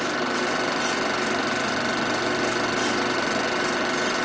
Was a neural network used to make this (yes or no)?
no